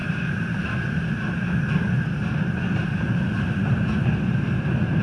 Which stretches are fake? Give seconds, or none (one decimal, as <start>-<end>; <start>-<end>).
0.0-0.6; 2.8-3.5